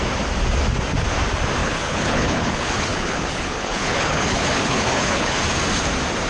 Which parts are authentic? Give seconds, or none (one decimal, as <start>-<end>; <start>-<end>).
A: 0.0-1.6; 5.4-6.3